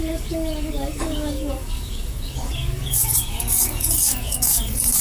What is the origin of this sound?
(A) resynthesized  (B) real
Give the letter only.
A